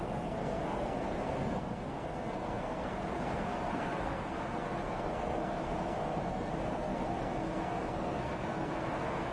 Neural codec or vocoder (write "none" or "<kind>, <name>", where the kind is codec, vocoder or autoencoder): codec, SNAC